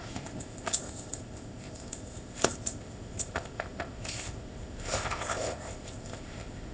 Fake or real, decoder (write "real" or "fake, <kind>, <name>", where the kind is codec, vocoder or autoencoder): fake, codec, ZipCodec